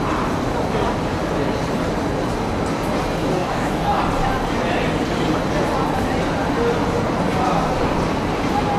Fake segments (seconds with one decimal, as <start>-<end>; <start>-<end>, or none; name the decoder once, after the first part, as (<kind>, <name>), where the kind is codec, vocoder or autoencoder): 3.2-4.0 (codec, DAC)